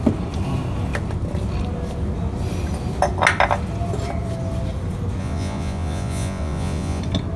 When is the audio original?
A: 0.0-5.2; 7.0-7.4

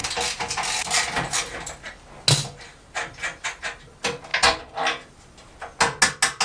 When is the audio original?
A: 0.0-6.4

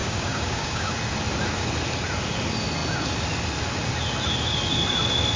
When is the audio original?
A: 0.9-5.4

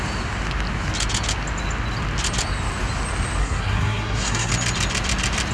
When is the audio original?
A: 0.0-3.4; 4.5-5.5

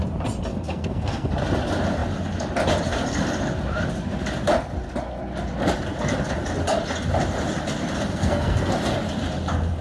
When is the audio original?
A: 0.0-0.5; 1.3-8.1; 8.7-9.8